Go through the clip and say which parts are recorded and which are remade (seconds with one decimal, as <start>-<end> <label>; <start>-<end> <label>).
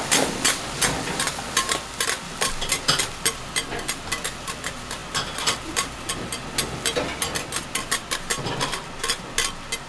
0.0-9.9 recorded